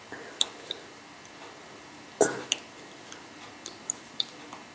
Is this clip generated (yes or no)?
no